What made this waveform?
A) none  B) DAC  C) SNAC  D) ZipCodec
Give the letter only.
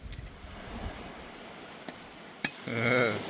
A